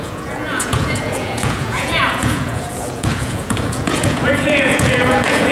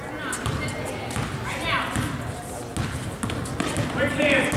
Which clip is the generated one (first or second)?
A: first